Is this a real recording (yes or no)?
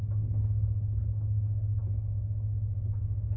yes